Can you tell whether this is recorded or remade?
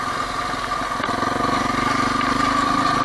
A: recorded